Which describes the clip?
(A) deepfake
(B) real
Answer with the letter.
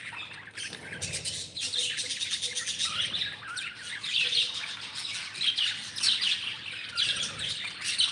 B